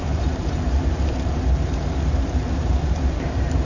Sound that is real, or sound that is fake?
fake